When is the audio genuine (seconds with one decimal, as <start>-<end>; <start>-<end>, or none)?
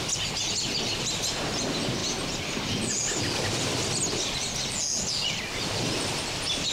0.0-6.7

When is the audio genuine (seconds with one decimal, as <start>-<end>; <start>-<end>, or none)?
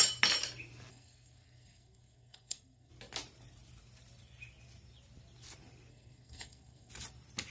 0.0-0.9; 2.9-5.9; 6.9-7.5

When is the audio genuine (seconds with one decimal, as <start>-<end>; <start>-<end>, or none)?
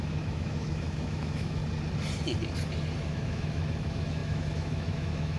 1.6-3.1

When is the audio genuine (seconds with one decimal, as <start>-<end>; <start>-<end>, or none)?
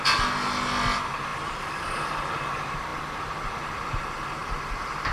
0.0-5.1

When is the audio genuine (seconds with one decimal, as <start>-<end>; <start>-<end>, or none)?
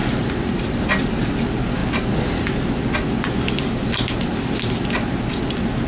0.0-5.9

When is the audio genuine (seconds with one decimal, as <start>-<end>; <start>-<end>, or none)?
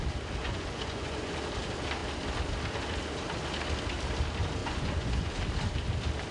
0.0-0.4; 1.3-4.6; 5.3-6.3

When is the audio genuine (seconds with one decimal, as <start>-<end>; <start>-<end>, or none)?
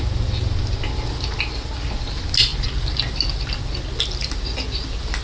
0.0-5.2